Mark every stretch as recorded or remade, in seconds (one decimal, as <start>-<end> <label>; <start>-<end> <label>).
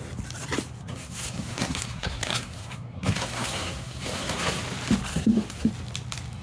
0.0-0.8 recorded; 0.8-4.6 remade; 4.6-5.1 recorded; 5.1-5.7 remade; 5.7-6.4 recorded